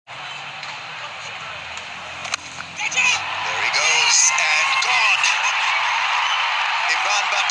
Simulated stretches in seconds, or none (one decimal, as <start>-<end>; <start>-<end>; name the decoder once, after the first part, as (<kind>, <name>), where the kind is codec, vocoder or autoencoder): none